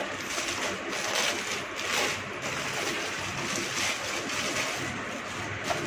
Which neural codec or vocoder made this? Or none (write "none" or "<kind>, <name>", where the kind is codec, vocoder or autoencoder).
none